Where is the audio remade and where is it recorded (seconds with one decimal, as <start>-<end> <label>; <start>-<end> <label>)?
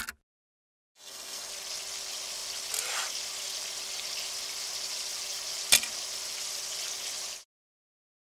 0.0-0.6 recorded; 0.6-1.5 remade; 1.5-8.2 recorded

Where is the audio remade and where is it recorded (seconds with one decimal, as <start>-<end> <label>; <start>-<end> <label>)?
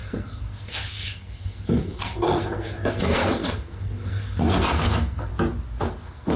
0.0-5.3 remade; 5.3-5.8 recorded; 5.8-6.4 remade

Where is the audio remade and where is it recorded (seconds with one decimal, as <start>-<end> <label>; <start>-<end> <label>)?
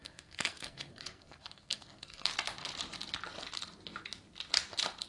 0.0-2.3 remade; 2.3-5.1 recorded